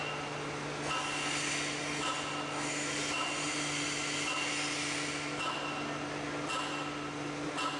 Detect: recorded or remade recorded